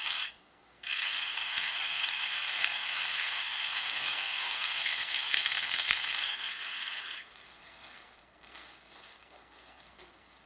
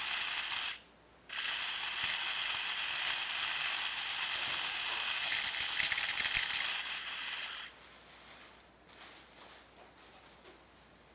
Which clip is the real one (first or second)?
second